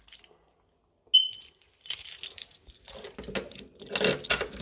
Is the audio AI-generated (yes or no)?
no